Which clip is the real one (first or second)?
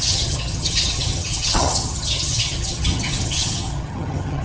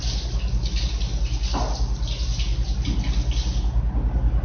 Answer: second